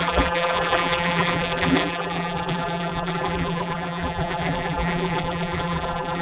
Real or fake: fake